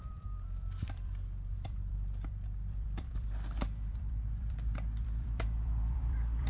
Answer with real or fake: fake